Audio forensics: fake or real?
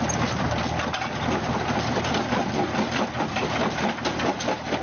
real